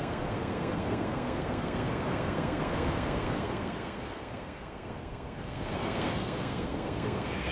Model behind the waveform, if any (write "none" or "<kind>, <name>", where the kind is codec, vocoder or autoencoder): codec, SNAC